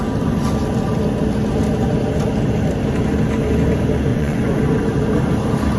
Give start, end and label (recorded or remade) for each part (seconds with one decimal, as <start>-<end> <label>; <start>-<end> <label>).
0.0-4.1 recorded; 4.1-4.6 remade; 4.6-5.8 recorded